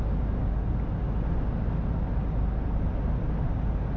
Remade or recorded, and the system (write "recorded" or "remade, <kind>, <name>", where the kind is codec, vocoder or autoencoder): recorded